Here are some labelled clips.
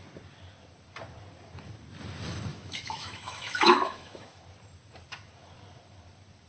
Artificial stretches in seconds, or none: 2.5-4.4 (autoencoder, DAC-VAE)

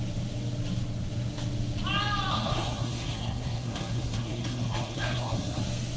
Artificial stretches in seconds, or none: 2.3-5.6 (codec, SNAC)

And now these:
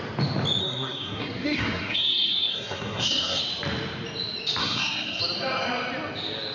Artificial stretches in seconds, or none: 0.6-3.4 (codec, SNAC); 4.6-5.2